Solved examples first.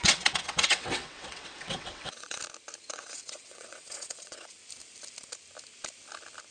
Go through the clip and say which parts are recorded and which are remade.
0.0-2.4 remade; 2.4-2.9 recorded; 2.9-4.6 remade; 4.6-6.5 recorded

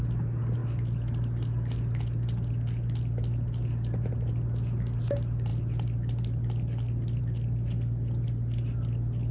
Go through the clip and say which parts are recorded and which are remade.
0.0-9.3 recorded

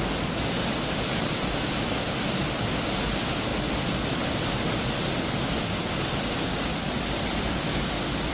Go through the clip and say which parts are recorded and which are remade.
0.0-8.3 recorded

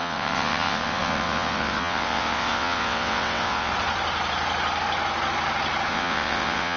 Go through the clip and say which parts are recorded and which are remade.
0.0-3.7 remade; 3.7-5.9 recorded; 5.9-6.8 remade

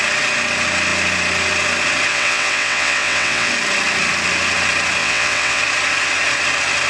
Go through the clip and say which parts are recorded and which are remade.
0.0-2.1 recorded; 2.1-3.5 remade; 3.5-5.0 recorded; 5.0-5.6 remade; 5.6-6.9 recorded

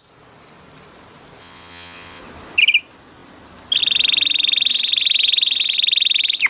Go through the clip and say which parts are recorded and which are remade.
0.0-1.4 recorded; 1.4-2.2 remade; 2.2-6.5 recorded

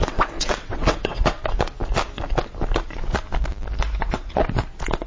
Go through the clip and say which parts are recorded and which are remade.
0.0-1.8 remade; 1.8-4.0 recorded; 4.0-4.4 remade; 4.4-5.1 recorded